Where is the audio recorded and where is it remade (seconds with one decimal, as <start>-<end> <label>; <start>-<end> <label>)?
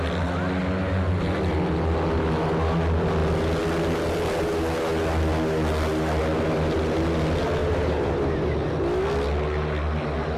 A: 0.0-7.6 recorded; 7.6-8.7 remade; 8.7-10.4 recorded